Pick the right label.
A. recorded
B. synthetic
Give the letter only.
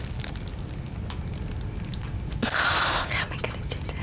A